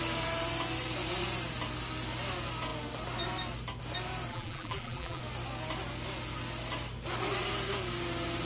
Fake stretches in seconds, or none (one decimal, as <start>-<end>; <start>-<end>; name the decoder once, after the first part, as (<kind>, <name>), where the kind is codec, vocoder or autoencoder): 4.3-5.2 (vocoder, BigVGAN v2)

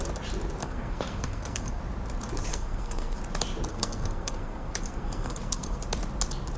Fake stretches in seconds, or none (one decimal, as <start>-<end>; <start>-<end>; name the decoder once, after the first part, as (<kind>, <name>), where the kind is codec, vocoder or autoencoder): 0.6-1.8 (codec, SNAC); 2.5-3.2; 3.7-5.8

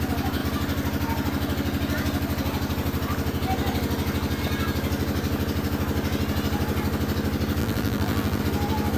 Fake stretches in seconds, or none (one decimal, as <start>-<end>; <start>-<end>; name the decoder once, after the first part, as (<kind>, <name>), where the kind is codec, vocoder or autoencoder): 7.6-8.4 (vocoder, BigVGAN v2)

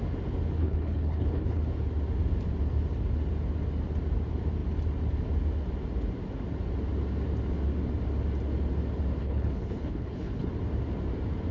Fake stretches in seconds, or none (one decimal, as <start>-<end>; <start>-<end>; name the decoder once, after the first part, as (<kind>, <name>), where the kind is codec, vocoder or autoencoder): 0.6-1.6 (codec, HILCodec); 9.2-10.5